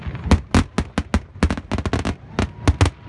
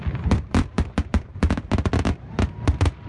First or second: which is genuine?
first